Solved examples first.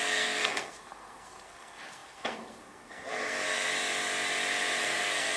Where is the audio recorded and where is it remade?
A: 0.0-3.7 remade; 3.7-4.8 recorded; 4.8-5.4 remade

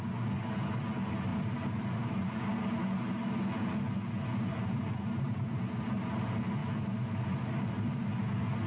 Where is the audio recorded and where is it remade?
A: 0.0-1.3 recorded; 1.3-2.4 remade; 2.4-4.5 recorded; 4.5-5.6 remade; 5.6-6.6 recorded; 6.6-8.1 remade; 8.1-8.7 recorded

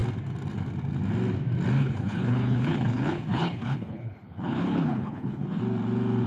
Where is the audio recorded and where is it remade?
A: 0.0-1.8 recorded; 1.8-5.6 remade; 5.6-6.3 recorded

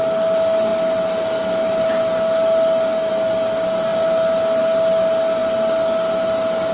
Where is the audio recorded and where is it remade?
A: 0.0-6.7 recorded

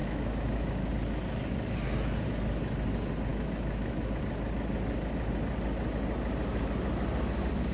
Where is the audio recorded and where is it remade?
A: 0.0-0.9 remade; 0.9-3.3 recorded; 3.3-4.2 remade; 4.2-7.7 recorded